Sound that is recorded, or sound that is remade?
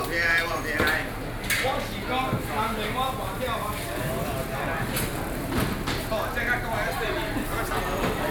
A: recorded